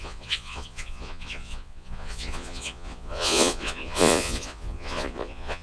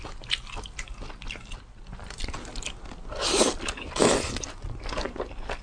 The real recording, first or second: second